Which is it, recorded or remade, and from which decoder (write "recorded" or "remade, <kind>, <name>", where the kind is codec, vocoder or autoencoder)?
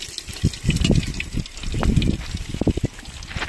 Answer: recorded